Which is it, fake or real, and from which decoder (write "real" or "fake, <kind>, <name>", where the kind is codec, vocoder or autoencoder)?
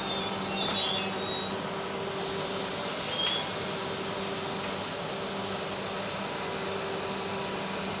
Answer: real